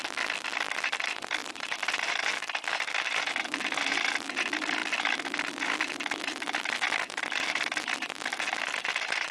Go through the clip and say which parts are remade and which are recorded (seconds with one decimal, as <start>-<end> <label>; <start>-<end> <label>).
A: 0.0-9.3 recorded